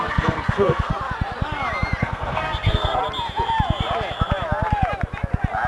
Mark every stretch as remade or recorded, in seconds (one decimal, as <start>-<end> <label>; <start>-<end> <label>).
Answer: 0.0-0.9 remade; 0.9-2.0 recorded; 2.0-3.0 remade; 3.0-5.7 recorded